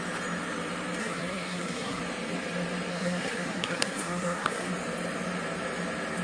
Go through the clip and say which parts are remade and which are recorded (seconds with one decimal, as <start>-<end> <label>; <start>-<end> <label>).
0.0-1.0 recorded; 1.0-2.0 remade; 2.0-2.9 recorded; 2.9-4.7 remade; 4.7-6.2 recorded